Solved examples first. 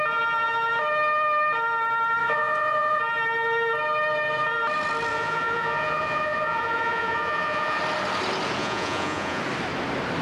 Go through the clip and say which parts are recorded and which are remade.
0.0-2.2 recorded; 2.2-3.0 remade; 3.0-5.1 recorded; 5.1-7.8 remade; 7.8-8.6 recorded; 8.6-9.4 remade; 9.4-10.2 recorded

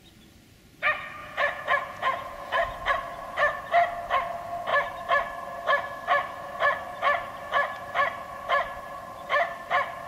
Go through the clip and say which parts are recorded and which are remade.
0.0-1.2 recorded; 1.2-2.9 remade; 2.9-10.1 recorded

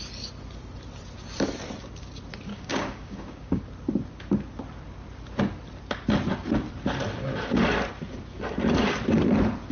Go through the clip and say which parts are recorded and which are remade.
0.0-2.5 recorded; 2.5-3.6 remade; 3.6-9.7 recorded

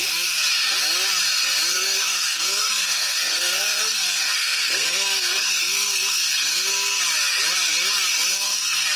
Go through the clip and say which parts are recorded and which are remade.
0.0-1.7 recorded; 1.7-7.0 remade; 7.0-8.3 recorded; 8.3-9.0 remade

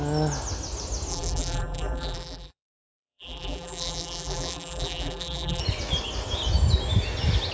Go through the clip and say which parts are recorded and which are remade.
0.0-1.1 recorded; 1.1-5.6 remade; 5.6-7.5 recorded

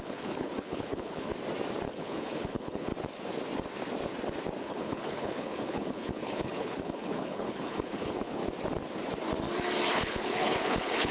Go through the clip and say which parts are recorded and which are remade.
0.0-1.3 remade; 1.3-1.9 recorded; 1.9-2.9 remade; 2.9-4.6 recorded; 4.6-8.4 remade; 8.4-9.9 recorded; 9.9-11.1 remade